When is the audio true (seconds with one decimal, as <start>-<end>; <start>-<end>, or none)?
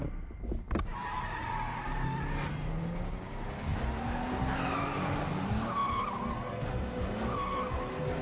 0.0-8.2